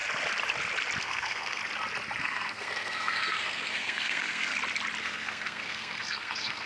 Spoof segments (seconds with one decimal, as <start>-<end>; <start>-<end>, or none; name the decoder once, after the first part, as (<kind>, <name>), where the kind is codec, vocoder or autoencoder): 1.0-1.6 (codec, SNAC); 2.2-4.5; 5.0-6.7